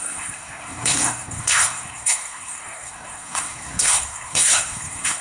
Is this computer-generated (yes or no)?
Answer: yes